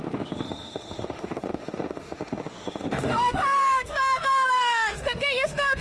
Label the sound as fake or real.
fake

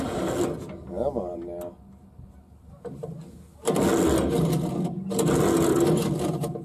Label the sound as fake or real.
real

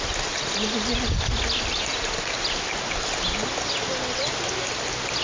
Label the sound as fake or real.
real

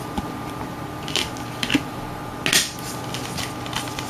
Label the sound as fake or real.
real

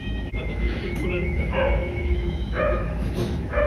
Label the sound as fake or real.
fake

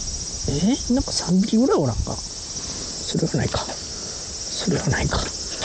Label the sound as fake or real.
real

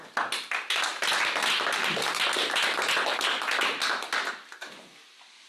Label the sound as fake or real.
real